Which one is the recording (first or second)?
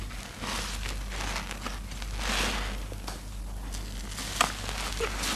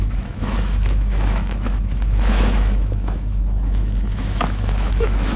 first